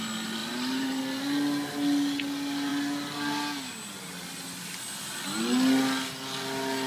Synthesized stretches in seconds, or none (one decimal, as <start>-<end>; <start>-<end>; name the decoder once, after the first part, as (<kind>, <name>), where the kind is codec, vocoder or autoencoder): 0.4-1.0 (vocoder, BigVGAN v2)